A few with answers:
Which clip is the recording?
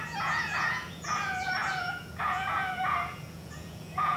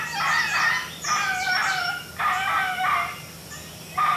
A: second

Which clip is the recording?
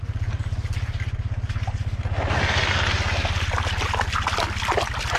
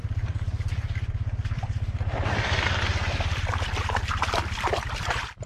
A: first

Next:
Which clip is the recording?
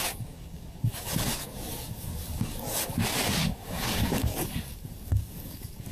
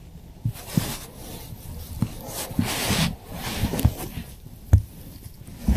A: second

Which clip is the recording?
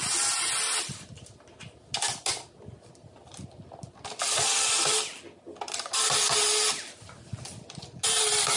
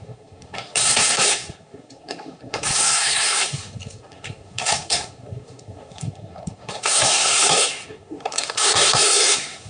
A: first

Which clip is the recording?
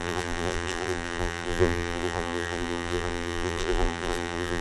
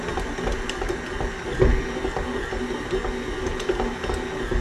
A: second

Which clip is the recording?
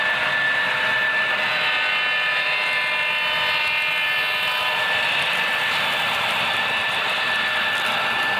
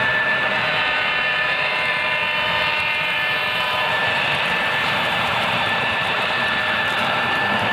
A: first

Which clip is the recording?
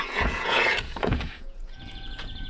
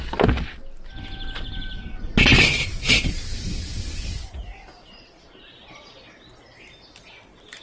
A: second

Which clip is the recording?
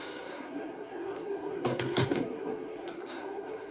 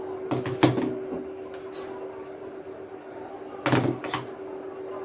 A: second